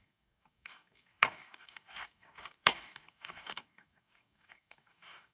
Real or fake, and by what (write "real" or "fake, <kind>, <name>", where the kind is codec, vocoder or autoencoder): fake, codec, DAC